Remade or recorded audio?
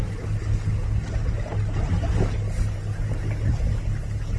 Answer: recorded